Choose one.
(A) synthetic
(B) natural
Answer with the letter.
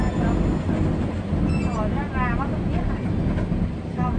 B